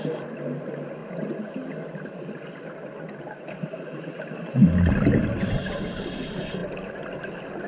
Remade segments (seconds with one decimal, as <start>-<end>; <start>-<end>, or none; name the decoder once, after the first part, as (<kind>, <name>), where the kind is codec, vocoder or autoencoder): none